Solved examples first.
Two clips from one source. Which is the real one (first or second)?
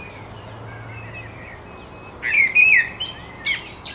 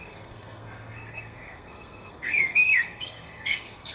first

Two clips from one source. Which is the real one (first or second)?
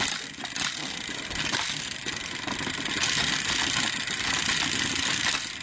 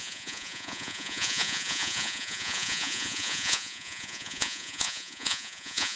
first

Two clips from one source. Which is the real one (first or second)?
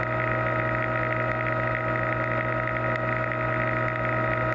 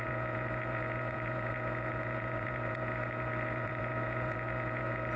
first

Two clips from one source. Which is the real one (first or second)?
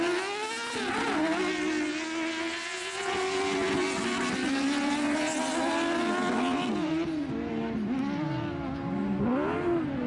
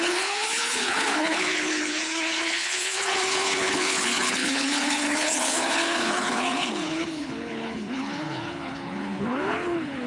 first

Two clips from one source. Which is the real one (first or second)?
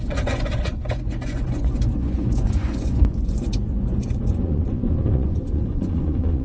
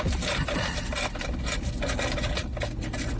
second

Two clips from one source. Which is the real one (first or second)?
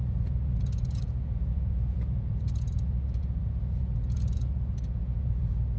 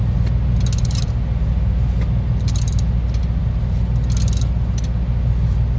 second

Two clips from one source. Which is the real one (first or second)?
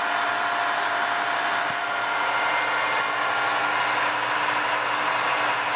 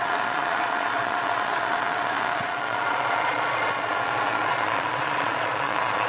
first